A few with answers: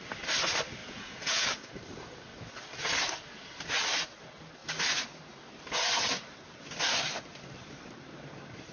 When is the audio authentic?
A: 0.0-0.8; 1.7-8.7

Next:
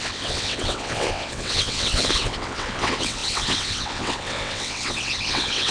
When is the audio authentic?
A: none

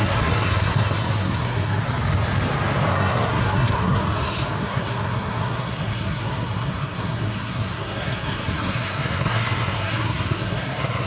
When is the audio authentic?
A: 1.8-2.9; 4.0-4.6

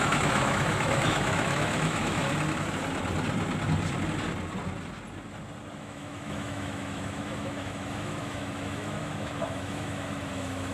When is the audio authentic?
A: 2.2-5.8

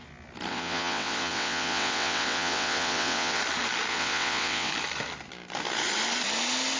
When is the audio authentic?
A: 0.0-0.5; 3.4-3.9; 4.7-6.8